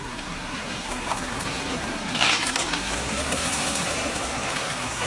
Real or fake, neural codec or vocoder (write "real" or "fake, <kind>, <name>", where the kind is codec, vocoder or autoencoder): fake, codec, SNAC